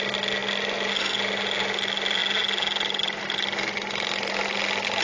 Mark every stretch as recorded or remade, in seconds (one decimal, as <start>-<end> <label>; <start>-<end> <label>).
0.0-5.0 recorded